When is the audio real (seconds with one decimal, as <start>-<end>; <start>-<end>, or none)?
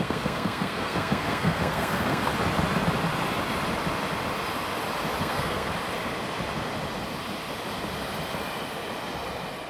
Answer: 2.3-5.2; 5.7-9.7